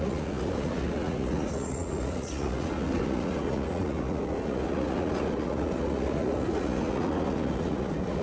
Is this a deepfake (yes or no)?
yes